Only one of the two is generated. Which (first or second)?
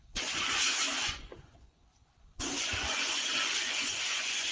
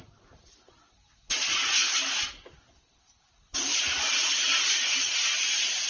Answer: first